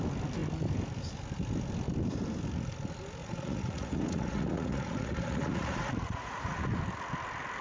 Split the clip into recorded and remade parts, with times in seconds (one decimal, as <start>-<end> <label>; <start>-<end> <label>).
0.0-3.2 recorded; 3.2-6.8 remade; 6.8-7.6 recorded